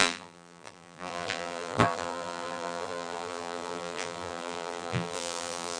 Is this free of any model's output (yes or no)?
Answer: no